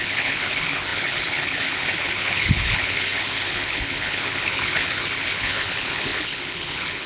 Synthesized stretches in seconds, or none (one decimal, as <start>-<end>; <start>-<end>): 0.0-7.1